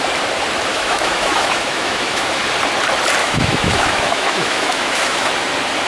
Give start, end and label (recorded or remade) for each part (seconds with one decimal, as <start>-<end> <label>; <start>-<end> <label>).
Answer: 0.0-0.7 recorded; 0.7-2.4 remade; 2.4-3.2 recorded; 3.2-5.3 remade; 5.3-5.9 recorded